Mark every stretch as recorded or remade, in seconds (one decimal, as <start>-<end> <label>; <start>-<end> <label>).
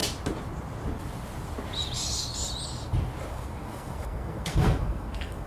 0.0-3.3 recorded; 3.3-5.5 remade